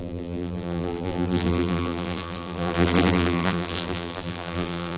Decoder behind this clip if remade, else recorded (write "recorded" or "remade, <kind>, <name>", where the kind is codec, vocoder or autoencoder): remade, vocoder, BigVGAN v2